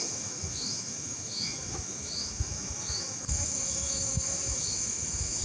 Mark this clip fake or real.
fake